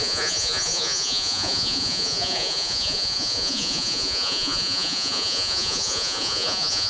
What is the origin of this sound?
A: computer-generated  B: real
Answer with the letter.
A